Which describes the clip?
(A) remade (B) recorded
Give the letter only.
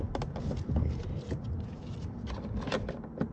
B